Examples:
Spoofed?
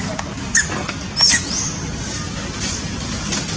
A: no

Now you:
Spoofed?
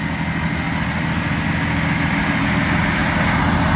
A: no